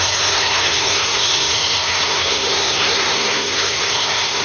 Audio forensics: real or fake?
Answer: fake